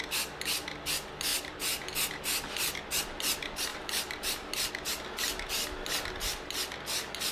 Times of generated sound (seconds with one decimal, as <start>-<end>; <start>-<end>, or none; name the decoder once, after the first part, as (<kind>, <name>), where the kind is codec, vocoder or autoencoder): 1.3-2.2 (vocoder, BigVGAN v2); 3.7-4.7